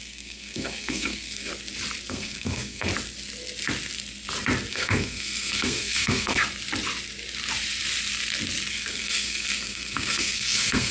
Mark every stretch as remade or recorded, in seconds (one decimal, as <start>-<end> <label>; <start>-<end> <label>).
0.0-1.5 remade; 1.5-2.1 recorded; 2.1-2.9 remade; 2.9-4.7 recorded; 4.7-6.4 remade; 6.4-8.7 recorded; 8.7-10.9 remade